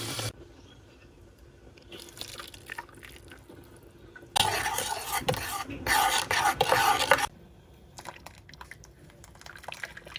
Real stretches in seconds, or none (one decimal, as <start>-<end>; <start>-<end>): 0.0-10.2